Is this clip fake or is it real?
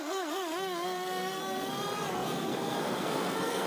fake